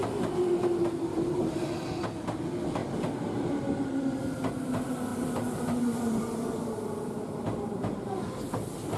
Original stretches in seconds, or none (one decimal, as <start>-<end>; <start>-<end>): 0.0-2.8; 4.2-5.1; 8.4-9.0